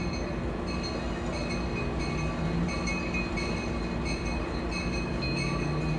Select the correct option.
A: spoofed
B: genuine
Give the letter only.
B